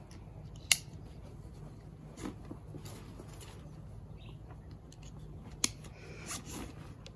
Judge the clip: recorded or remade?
recorded